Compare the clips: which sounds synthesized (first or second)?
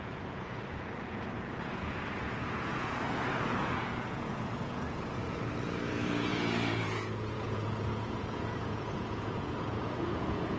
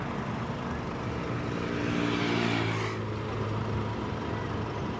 first